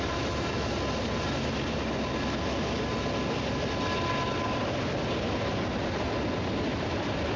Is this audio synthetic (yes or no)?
no